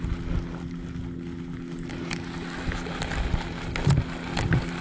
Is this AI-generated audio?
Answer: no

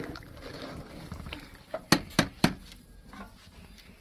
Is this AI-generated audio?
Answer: no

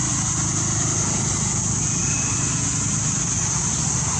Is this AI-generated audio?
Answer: no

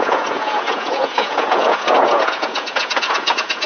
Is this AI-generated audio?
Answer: yes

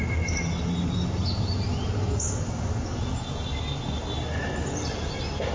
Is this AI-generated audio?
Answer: no